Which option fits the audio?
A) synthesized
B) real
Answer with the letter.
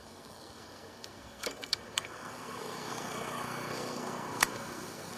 A